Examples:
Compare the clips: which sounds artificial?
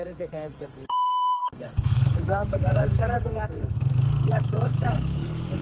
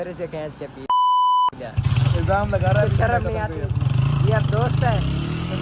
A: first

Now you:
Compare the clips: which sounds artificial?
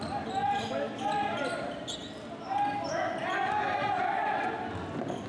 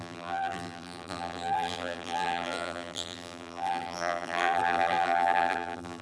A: second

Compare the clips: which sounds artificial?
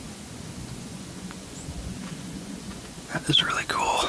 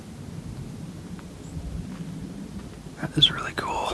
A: first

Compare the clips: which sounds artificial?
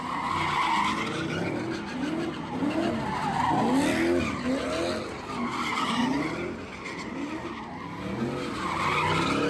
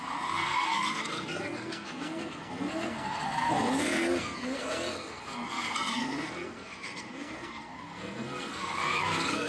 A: second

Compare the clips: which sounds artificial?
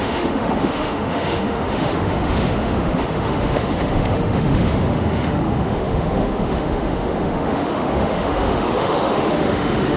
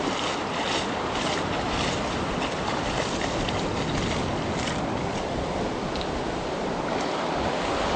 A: first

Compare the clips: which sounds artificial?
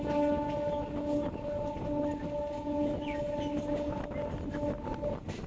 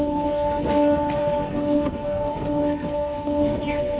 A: second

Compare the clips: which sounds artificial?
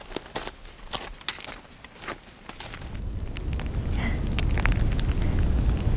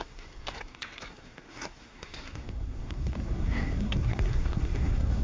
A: second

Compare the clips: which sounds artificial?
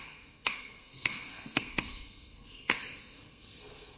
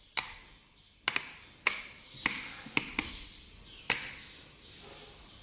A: first